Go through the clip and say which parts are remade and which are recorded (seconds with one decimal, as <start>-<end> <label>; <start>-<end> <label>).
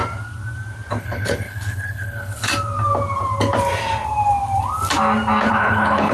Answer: 0.0-1.0 recorded; 1.0-2.5 remade; 2.5-5.5 recorded; 5.5-6.1 remade